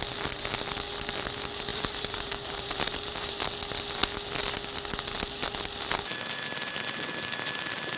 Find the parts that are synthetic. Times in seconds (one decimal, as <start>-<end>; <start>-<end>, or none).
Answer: 1.7-3.3